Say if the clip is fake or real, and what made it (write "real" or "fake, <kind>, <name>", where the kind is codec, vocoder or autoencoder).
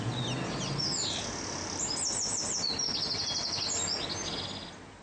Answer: real